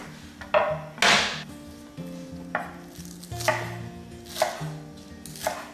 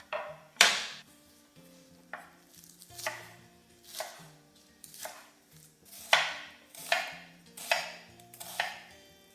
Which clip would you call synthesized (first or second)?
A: second